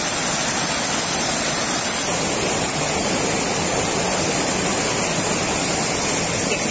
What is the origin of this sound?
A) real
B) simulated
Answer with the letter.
A